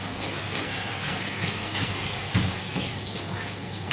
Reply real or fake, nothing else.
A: fake